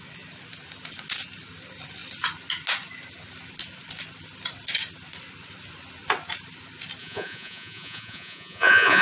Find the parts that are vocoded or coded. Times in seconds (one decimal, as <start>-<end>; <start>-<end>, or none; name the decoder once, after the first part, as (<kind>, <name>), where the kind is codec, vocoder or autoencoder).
7.0-9.0 (vocoder, Vocos)